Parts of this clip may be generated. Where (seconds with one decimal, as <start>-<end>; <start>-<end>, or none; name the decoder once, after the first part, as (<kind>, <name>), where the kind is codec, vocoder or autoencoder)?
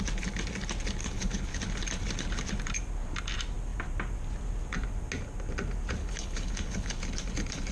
1.0-1.6 (codec, HILCodec); 6.0-7.0